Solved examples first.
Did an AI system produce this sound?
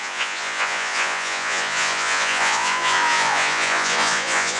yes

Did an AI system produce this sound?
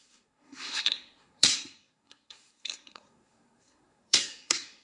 yes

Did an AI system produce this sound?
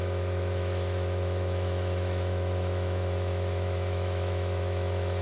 yes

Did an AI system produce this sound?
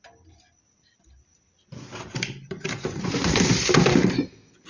no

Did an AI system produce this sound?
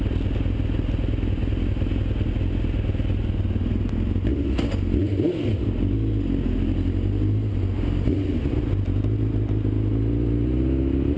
no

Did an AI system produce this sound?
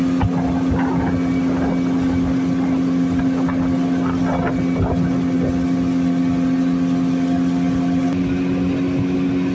no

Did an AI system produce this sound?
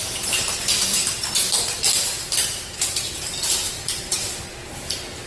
yes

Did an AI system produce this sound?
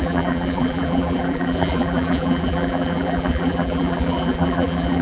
yes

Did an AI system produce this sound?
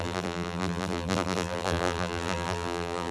yes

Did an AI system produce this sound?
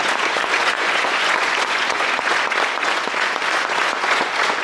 yes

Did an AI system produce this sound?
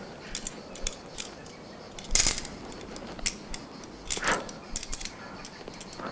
no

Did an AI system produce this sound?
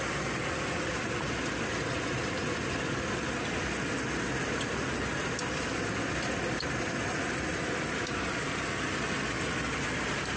no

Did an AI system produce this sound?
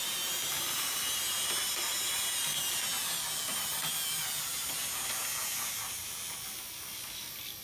no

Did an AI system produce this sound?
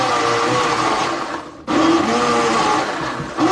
no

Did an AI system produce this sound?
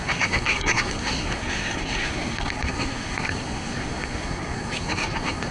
yes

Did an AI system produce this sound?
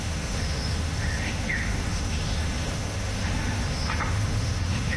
yes